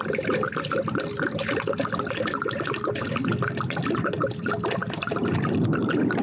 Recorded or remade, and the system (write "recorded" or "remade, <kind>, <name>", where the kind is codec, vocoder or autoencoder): recorded